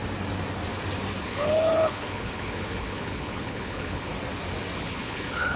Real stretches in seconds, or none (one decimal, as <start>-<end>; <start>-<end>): 0.0-1.2; 4.1-4.8